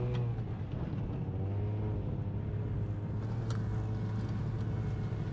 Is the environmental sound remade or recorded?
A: recorded